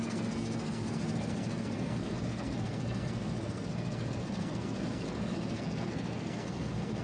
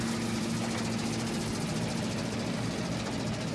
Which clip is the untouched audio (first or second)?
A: second